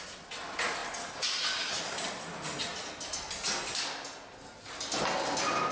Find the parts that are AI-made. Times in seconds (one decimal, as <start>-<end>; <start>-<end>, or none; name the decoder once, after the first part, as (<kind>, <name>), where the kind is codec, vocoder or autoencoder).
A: none